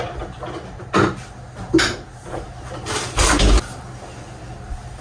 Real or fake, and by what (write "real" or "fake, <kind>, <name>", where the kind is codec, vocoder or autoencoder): real